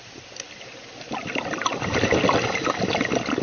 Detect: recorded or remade recorded